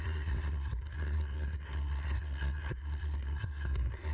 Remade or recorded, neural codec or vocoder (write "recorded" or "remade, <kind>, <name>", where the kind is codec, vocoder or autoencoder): remade, codec, SNAC